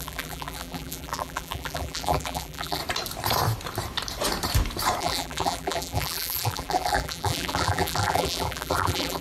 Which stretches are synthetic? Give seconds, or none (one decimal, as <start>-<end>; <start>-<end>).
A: 0.0-2.8; 5.0-9.2